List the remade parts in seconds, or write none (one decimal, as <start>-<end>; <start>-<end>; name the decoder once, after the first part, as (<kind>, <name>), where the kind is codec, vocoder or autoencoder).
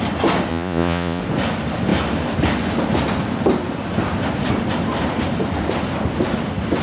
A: 0.5-1.2 (vocoder, Vocos)